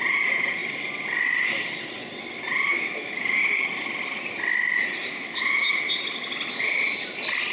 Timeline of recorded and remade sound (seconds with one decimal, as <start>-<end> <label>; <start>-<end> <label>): 0.0-2.7 recorded; 2.7-3.4 remade; 3.4-5.1 recorded; 5.1-5.9 remade; 5.9-7.5 recorded